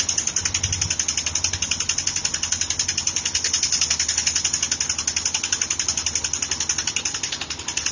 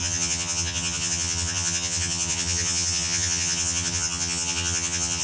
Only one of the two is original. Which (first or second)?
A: first